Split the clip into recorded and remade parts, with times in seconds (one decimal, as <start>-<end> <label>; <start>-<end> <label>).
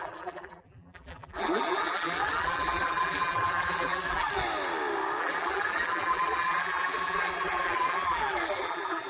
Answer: 0.0-4.4 remade; 4.4-5.2 recorded; 5.2-9.1 remade